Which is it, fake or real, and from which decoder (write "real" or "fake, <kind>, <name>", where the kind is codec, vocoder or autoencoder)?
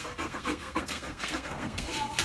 fake, codec, SNAC